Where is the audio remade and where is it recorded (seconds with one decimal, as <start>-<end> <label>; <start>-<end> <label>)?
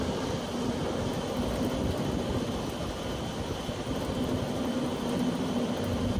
0.0-6.2 recorded